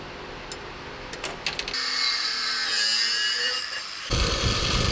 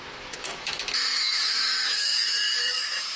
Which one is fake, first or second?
second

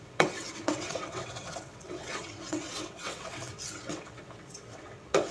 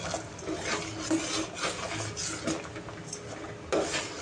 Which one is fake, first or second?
first